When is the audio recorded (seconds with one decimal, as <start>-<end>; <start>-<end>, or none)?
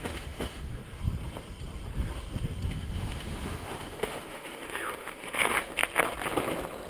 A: 0.8-2.7; 5.8-6.9